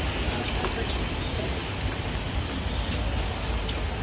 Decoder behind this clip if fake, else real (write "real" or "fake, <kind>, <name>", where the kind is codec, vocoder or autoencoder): real